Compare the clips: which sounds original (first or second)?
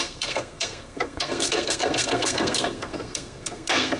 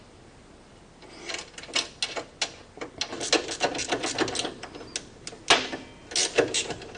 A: second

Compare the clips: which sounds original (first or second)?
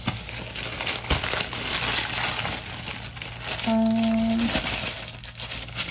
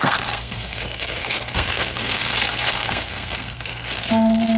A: first